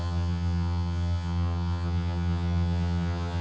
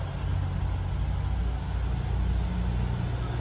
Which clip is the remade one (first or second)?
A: first